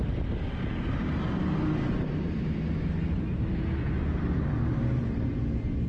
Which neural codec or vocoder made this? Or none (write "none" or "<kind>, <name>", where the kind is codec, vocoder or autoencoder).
none